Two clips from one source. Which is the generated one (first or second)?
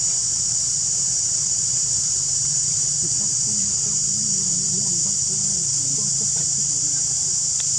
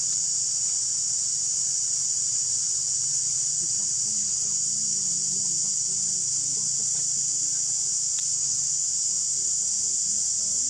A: first